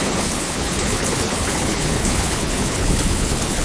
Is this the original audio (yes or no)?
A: no